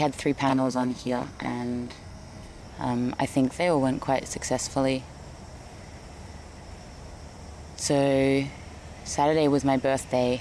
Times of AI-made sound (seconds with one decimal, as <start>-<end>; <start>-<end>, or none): 0.5-2.6